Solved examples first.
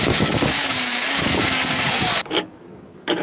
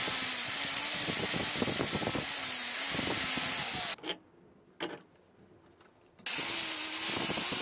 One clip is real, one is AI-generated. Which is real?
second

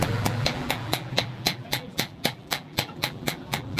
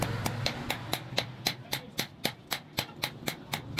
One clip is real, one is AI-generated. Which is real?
second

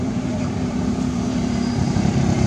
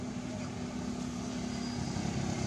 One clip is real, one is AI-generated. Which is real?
second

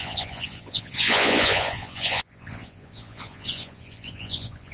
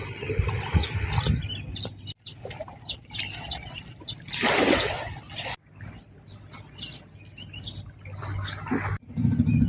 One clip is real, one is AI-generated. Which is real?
second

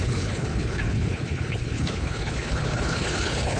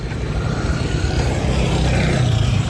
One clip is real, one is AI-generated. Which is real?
second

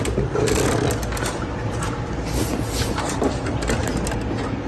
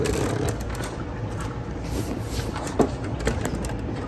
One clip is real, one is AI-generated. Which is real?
first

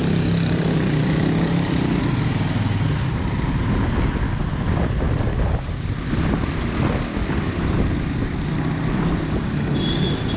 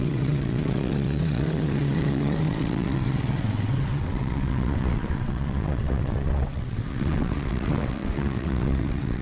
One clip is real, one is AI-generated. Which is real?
first